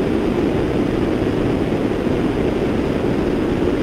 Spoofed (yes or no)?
no